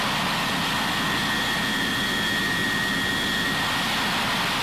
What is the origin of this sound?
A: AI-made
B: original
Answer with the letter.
B